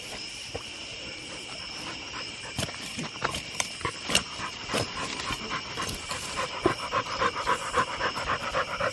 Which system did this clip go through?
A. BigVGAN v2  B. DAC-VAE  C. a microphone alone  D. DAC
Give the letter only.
C